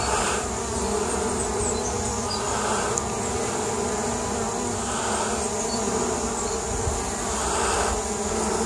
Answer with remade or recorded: recorded